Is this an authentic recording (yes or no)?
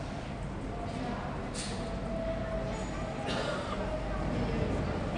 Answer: yes